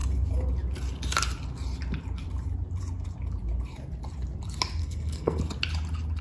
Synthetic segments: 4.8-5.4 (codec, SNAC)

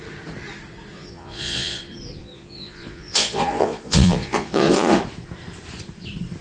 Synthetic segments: 0.9-1.8 (vocoder, Vocos); 2.2-5.0

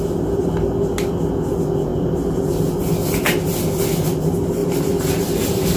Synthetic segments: 4.6-5.8 (vocoder, BigVGAN v2)

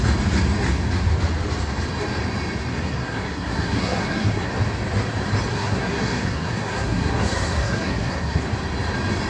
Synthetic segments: 2.7-4.5 (codec, SNAC); 5.5-8.4

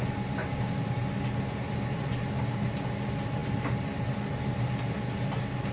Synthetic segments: none

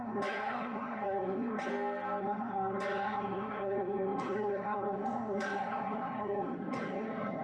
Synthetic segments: 0.0-1.7 (codec, SNAC); 2.2-7.4

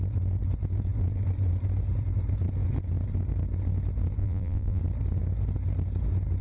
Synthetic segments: 4.2-4.8 (vocoder, BigVGAN v2)